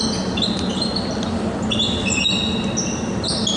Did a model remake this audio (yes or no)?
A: no